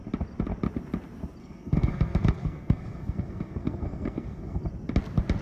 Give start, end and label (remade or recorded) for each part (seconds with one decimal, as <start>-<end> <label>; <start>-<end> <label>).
0.0-1.4 recorded; 1.4-4.6 remade; 4.6-5.4 recorded